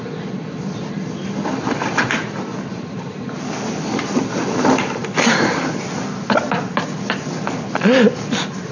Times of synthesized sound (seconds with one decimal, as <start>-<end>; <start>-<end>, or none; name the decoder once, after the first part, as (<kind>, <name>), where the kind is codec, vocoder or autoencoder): 0.0-5.0 (vocoder, BigVGAN v2); 7.7-8.7